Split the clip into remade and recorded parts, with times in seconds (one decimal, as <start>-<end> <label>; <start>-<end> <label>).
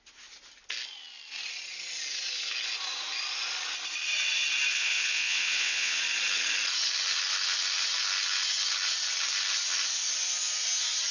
0.0-4.7 recorded; 4.7-6.0 remade; 6.0-11.1 recorded